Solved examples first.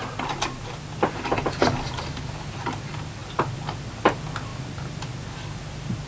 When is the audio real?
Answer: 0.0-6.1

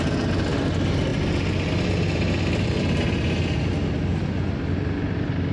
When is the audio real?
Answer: 0.0-5.5

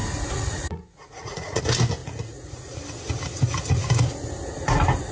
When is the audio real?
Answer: 1.6-2.0; 2.8-5.1